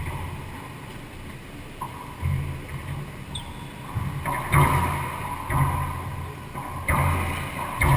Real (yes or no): yes